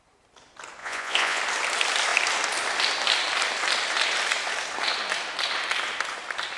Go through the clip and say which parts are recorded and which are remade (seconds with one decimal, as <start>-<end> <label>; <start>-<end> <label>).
0.0-0.8 recorded; 0.8-1.4 remade; 1.4-6.6 recorded